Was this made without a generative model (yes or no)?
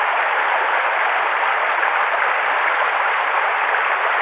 yes